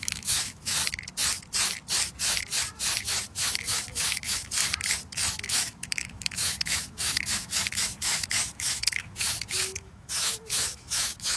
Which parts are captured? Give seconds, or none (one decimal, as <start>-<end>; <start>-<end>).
0.8-3.0; 4.6-5.4